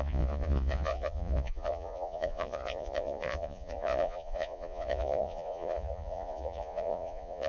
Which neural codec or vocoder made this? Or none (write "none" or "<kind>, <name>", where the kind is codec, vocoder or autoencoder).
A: vocoder, Vocos